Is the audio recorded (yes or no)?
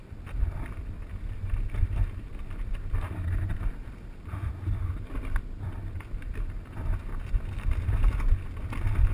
yes